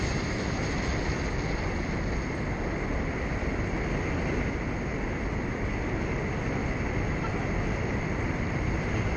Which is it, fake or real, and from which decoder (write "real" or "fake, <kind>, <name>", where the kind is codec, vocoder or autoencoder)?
real